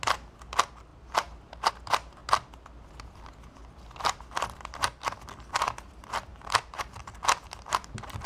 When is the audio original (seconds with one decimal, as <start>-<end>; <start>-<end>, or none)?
0.0-0.9; 1.7-6.3; 7.0-8.3